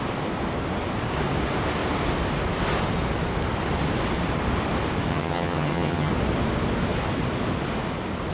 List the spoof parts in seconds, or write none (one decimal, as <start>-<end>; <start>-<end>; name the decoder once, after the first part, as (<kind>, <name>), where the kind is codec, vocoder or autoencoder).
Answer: 5.1-6.1 (vocoder, HiFi-GAN)